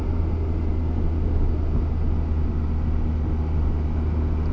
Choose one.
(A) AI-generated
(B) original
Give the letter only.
B